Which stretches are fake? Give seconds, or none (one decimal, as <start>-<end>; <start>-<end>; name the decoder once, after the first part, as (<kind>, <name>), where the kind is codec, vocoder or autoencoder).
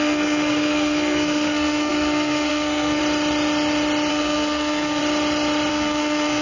0.0-3.0 (codec, SNAC); 4.1-5.0; 5.7-6.4